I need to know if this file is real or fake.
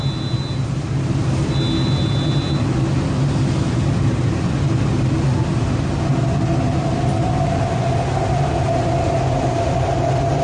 real